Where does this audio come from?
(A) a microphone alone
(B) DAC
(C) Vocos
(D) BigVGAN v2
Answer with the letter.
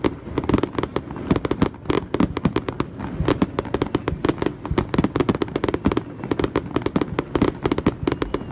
A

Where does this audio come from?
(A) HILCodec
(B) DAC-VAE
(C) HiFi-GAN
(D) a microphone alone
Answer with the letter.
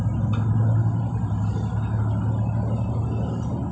D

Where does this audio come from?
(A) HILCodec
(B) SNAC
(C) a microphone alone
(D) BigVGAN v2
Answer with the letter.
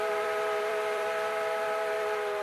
D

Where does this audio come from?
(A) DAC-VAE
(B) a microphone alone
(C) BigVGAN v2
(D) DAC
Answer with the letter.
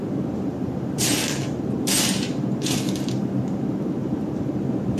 C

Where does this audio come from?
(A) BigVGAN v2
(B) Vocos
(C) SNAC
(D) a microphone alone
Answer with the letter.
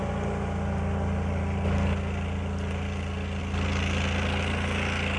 D